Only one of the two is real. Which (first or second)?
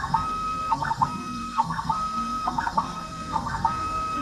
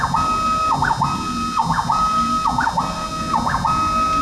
second